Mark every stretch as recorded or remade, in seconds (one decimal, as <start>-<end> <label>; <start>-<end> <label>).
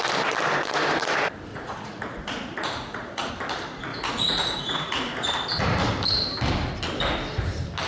0.0-1.5 recorded; 1.5-3.3 remade; 3.3-3.9 recorded; 3.9-5.3 remade; 5.3-7.9 recorded